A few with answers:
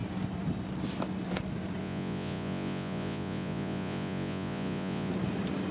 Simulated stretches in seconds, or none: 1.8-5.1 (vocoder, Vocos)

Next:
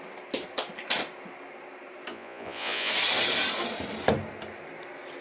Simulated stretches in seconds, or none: 2.1-2.9 (vocoder, Vocos)